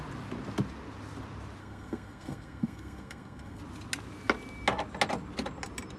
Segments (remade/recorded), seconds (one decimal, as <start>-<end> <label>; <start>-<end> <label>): 0.0-1.6 recorded; 1.6-3.6 remade; 3.6-6.0 recorded